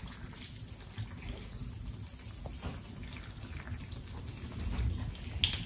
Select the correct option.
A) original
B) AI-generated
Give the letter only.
A